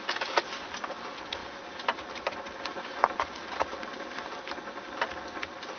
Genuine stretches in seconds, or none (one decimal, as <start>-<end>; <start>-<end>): 1.4-4.9